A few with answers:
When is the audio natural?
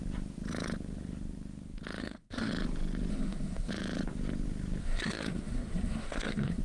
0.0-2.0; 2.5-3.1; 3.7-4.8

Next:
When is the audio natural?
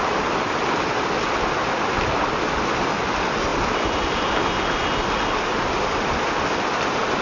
0.0-7.2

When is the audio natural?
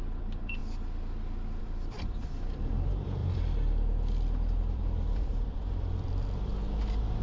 0.6-1.6; 6.5-7.2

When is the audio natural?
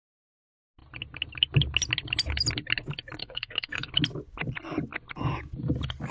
0.0-3.2; 3.9-6.1